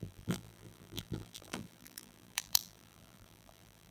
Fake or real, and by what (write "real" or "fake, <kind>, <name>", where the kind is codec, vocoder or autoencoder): fake, vocoder, BigVGAN v2